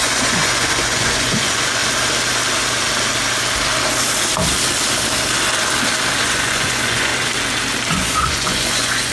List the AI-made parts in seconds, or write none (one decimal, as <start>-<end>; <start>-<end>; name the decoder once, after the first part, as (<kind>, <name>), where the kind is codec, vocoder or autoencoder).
0.0-1.8 (vocoder, Vocos); 6.2-7.1; 7.9-9.1